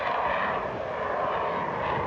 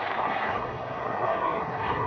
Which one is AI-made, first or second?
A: second